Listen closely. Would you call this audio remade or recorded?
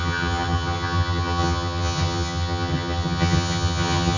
remade